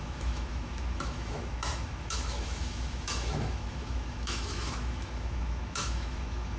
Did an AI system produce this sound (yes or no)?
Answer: yes